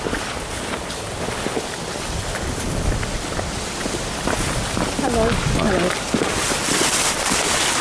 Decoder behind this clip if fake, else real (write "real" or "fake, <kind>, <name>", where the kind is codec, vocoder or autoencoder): real